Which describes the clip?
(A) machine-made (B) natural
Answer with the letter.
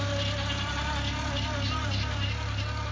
B